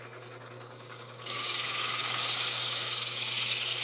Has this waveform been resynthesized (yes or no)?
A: yes